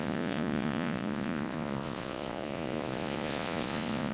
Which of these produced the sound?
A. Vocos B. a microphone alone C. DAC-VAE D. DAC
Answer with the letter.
A